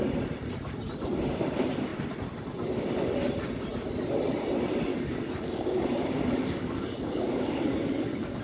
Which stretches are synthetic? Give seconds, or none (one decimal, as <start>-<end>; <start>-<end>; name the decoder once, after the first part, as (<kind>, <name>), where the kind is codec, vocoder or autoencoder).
4.9-8.4 (codec, DAC)

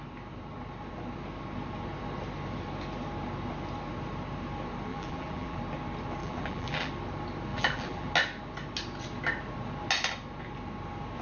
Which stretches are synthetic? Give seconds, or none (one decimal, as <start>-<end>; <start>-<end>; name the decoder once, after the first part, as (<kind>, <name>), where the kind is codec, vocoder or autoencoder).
4.9-5.6 (vocoder, BigVGAN v2); 6.2-6.9; 7.5-8.1

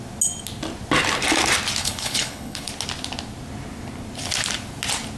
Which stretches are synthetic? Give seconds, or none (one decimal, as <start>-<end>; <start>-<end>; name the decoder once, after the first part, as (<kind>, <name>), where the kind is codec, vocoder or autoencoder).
1.8-2.7 (codec, HILCodec)

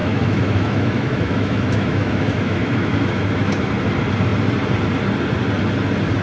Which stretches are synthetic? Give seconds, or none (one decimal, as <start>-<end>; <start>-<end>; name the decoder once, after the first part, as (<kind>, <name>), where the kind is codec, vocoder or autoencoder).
0.0-3.7 (autoencoder, DAC-VAE)

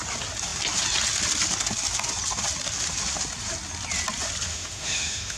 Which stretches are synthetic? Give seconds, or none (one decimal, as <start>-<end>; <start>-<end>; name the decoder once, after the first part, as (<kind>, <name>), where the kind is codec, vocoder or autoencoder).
4.5-5.4 (autoencoder, DAC-VAE)